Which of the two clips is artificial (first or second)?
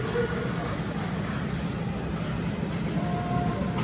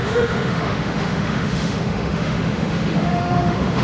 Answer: second